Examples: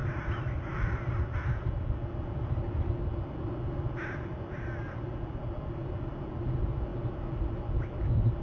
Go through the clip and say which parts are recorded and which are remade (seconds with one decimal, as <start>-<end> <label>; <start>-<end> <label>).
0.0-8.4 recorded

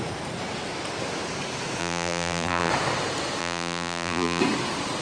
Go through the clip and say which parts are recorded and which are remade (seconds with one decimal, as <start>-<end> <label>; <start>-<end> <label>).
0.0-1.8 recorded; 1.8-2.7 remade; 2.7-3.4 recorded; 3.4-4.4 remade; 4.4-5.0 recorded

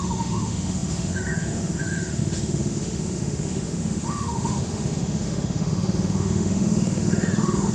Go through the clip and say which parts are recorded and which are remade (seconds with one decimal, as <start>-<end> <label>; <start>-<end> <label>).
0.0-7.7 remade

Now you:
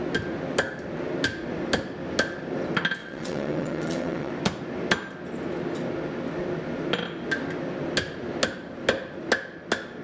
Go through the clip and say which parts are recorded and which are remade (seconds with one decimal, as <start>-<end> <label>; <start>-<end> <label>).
0.0-3.0 recorded; 3.0-4.3 remade; 4.3-10.0 recorded

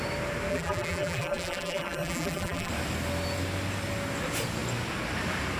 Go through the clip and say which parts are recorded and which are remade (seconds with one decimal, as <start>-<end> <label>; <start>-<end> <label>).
0.0-0.5 recorded; 0.5-2.7 remade; 2.7-5.6 recorded

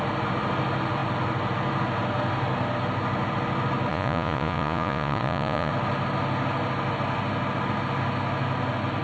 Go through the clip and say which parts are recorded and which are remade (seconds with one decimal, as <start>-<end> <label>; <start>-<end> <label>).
0.0-3.9 recorded; 3.9-5.7 remade; 5.7-9.0 recorded

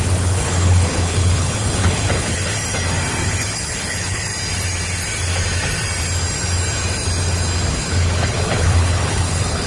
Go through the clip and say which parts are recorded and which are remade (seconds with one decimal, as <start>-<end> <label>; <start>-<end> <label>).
0.0-2.6 remade; 2.6-3.4 recorded; 3.4-4.3 remade; 4.3-7.7 recorded; 7.7-9.7 remade